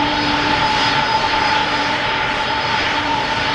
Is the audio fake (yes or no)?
yes